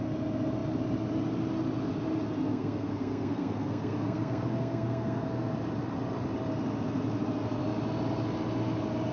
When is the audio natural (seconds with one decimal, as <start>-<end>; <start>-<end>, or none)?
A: 0.0-2.5; 5.5-9.1